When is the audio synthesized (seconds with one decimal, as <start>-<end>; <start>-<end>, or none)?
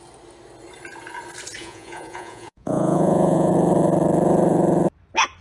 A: 1.6-3.5